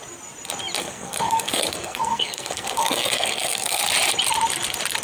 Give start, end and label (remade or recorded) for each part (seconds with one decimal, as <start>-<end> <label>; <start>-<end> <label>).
0.0-0.8 recorded; 0.8-3.8 remade; 3.8-5.0 recorded